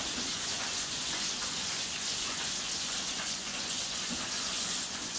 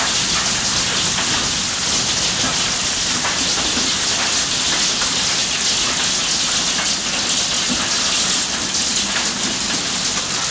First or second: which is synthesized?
first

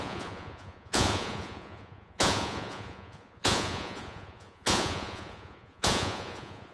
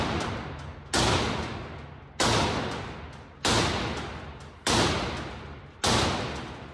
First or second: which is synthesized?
first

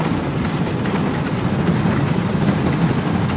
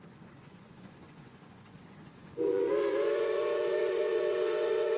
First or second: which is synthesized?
second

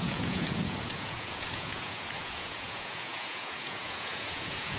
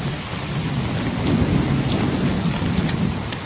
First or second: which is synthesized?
first